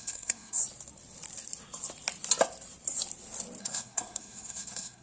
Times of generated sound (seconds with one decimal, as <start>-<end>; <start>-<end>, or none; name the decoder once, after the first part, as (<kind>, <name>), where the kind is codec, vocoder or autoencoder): 0.0-0.6 (codec, SNAC); 3.6-5.0